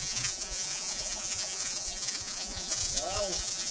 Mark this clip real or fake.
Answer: fake